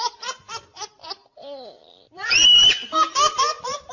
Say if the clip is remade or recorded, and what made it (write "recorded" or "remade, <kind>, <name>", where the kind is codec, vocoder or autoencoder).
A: remade, vocoder, BigVGAN v2